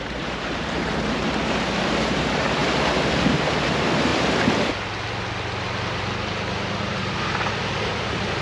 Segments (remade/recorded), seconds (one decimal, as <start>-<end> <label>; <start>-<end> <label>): 0.0-2.6 remade; 2.6-3.3 recorded; 3.3-4.1 remade; 4.1-7.8 recorded; 7.8-8.4 remade